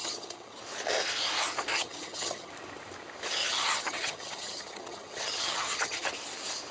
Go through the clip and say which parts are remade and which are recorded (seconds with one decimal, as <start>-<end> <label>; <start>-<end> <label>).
0.0-0.6 remade; 0.6-1.7 recorded; 1.7-2.5 remade; 2.5-3.4 recorded; 3.4-6.1 remade; 6.1-6.7 recorded